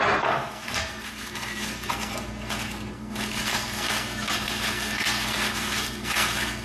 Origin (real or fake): fake